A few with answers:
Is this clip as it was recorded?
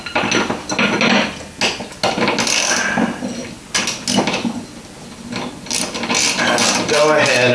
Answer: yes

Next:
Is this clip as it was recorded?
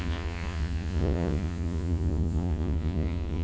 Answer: no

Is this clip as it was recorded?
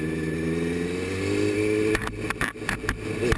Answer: yes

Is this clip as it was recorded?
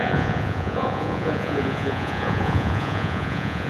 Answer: no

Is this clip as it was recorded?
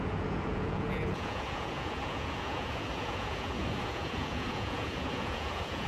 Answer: no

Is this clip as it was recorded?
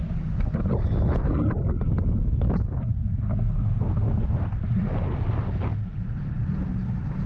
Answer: yes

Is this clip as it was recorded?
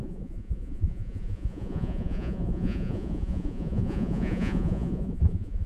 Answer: no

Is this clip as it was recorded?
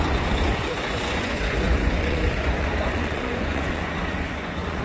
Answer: no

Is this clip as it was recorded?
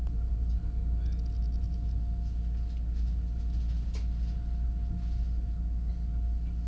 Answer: yes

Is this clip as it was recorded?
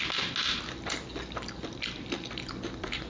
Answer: yes